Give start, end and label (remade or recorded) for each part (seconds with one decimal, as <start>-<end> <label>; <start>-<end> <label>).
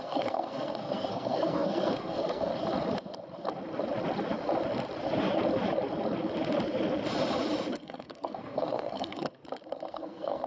0.0-2.5 remade; 2.5-7.7 recorded; 7.7-9.4 remade; 9.4-9.9 recorded; 9.9-10.5 remade